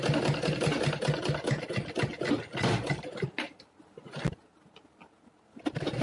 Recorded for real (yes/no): yes